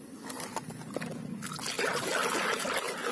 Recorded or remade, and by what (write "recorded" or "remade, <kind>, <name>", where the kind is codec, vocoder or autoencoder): recorded